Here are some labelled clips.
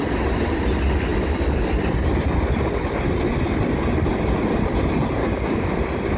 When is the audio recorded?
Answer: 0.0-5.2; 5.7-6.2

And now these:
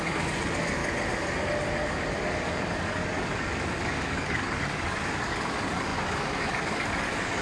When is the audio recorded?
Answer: 0.8-2.3

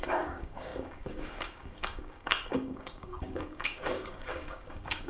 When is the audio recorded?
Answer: none

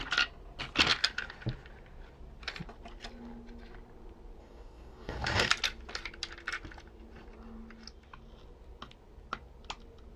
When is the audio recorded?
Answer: 0.0-4.4; 5.5-10.2

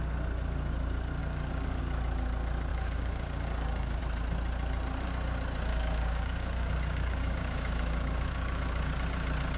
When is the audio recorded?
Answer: 0.0-1.2; 1.8-2.7; 4.0-5.7; 8.9-9.6

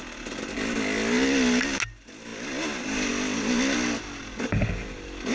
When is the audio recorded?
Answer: 0.0-5.3

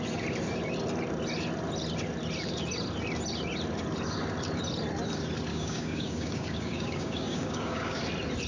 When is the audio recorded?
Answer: 0.0-5.5; 8.0-8.5